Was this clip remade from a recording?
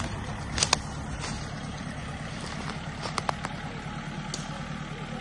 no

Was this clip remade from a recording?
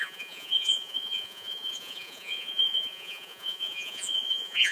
yes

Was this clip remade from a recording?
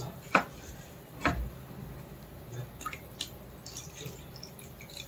no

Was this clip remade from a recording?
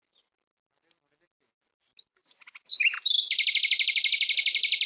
yes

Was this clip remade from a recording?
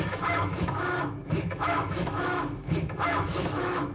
yes